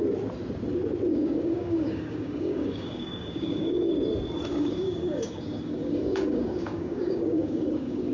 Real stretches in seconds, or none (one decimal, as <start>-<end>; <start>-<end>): 0.0-1.1; 3.9-4.5